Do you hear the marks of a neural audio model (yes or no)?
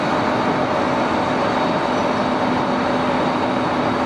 no